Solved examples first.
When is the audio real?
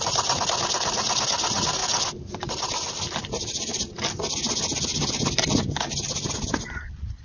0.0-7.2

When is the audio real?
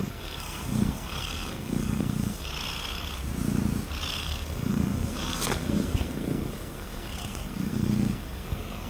2.5-4.2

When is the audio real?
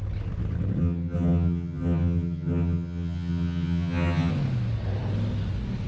0.0-0.8; 4.3-5.9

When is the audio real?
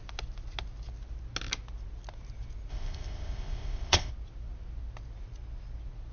0.0-2.7; 4.1-6.1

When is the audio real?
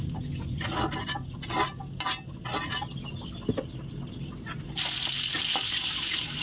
0.0-6.4